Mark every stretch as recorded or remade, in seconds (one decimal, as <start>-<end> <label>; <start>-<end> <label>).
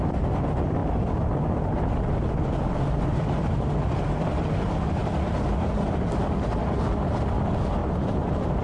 0.0-7.8 recorded; 7.8-8.6 remade